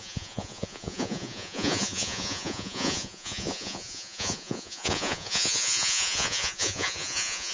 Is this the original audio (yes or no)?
no